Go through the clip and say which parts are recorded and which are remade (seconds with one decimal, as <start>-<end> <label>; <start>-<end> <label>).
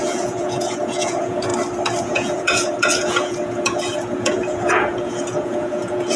0.0-1.5 remade; 1.5-2.0 recorded; 2.0-6.2 remade